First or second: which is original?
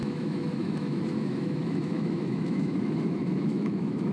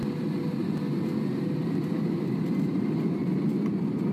second